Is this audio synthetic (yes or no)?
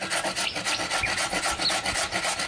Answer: no